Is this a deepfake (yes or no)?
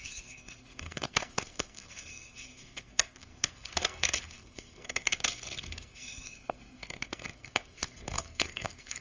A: yes